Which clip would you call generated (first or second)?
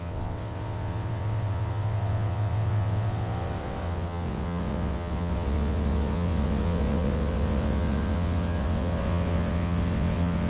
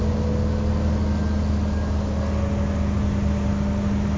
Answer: first